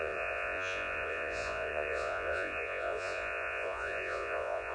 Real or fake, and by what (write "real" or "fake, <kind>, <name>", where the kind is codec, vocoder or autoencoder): fake, vocoder, Vocos